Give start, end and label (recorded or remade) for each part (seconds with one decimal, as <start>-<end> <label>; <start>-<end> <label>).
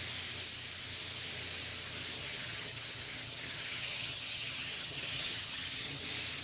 0.0-2.2 recorded; 2.2-6.0 remade; 6.0-6.4 recorded